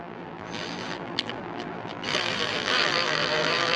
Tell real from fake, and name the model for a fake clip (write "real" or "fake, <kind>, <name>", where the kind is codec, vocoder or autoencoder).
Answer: fake, vocoder, BigVGAN v2